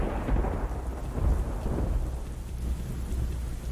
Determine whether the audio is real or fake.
real